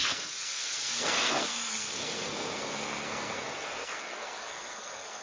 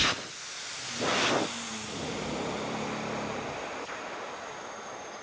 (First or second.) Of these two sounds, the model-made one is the first